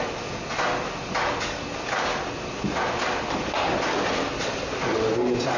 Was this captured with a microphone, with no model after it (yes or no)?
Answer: yes